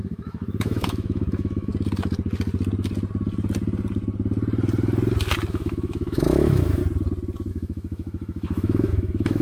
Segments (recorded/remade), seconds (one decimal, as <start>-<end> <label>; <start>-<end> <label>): 0.0-1.7 remade; 1.7-5.5 recorded; 5.5-6.8 remade; 6.8-7.5 recorded; 7.5-9.4 remade